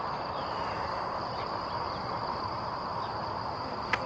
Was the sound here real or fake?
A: fake